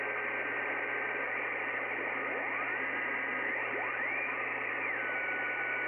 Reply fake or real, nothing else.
fake